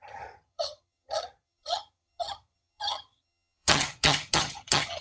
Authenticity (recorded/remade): remade